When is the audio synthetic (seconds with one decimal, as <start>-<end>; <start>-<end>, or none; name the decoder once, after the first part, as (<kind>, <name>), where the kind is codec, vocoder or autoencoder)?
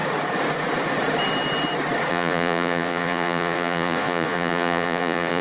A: 2.1-5.4 (vocoder, Vocos)